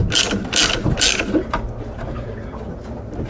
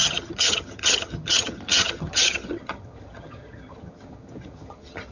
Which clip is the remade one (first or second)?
second